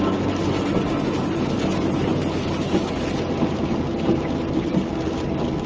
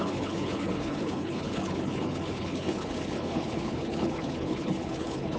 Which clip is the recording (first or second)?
first